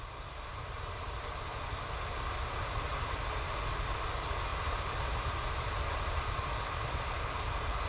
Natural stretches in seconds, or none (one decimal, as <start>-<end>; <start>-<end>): 0.0-7.9